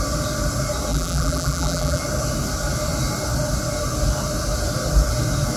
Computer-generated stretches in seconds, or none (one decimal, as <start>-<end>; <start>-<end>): 0.9-2.0